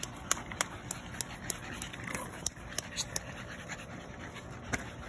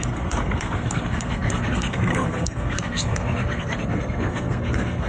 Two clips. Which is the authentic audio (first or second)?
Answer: first